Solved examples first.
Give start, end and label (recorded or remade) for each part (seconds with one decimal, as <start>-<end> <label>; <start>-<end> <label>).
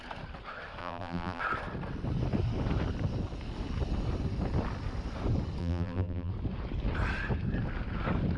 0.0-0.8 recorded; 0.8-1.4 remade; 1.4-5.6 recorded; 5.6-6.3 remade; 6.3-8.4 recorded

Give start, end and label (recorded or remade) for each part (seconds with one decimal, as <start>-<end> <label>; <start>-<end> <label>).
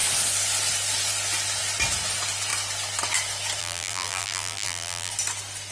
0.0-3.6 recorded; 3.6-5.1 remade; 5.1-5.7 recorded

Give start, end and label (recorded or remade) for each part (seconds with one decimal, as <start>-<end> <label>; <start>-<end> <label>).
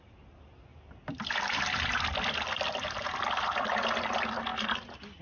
0.0-0.7 recorded; 0.7-3.8 remade; 3.8-4.5 recorded; 4.5-5.2 remade